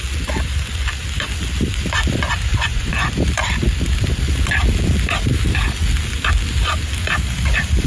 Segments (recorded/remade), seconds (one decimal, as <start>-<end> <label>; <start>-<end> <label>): 0.0-2.5 recorded; 2.5-3.1 remade; 3.1-7.9 recorded